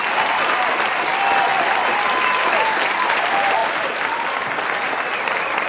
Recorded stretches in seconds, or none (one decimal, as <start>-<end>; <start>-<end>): 0.0-5.7

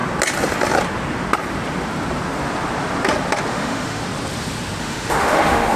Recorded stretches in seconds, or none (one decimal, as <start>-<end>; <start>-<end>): 0.0-3.5; 4.0-4.8

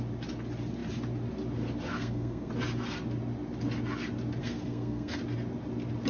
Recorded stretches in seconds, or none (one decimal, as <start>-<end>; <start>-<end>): 0.0-1.9; 2.5-4.4; 5.2-6.1

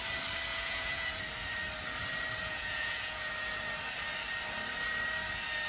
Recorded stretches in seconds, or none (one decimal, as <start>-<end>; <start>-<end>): 0.0-0.5; 1.2-2.4; 3.3-5.7

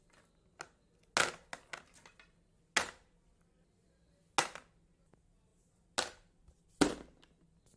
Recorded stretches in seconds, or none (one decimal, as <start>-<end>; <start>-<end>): 0.0-7.8

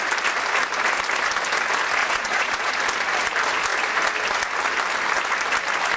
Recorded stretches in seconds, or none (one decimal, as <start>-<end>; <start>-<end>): 0.0-2.0; 2.7-6.0

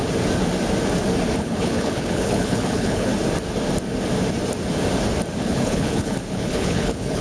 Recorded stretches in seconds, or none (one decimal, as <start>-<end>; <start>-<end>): 0.0-1.4; 3.1-5.4